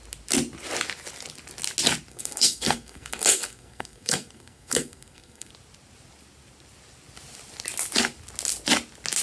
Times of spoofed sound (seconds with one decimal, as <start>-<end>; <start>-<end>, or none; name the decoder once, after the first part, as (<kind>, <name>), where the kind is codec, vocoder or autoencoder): 2.1-5.5 (codec, SNAC)